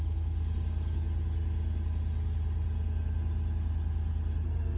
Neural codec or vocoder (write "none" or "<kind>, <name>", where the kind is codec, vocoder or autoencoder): none